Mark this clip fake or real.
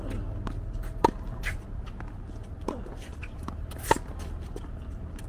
real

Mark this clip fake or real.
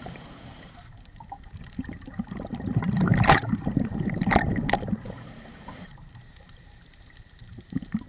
fake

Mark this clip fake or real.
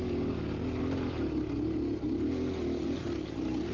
real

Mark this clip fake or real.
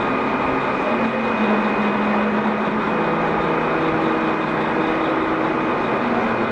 real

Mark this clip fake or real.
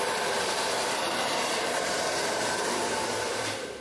fake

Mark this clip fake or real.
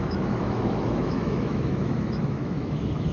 fake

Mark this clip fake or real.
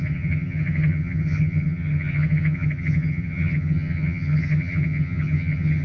fake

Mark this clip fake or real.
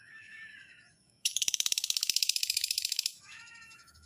fake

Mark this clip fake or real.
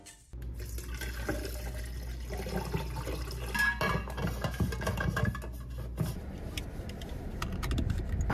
real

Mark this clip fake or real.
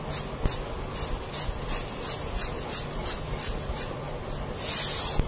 real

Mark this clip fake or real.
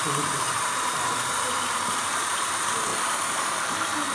fake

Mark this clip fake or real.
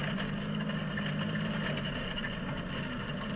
real